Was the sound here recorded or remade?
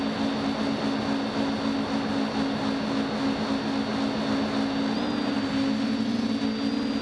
recorded